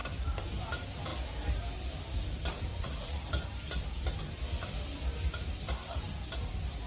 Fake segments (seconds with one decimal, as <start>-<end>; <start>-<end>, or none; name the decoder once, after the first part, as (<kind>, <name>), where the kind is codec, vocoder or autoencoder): 2.7-3.3 (vocoder, Vocos)